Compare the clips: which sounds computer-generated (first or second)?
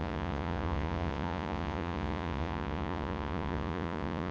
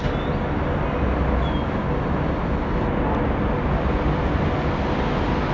first